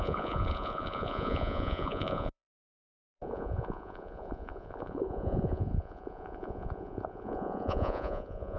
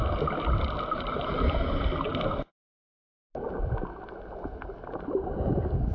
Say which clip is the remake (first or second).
first